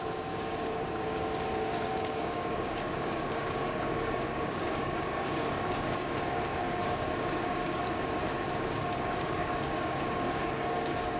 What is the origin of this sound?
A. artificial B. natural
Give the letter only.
A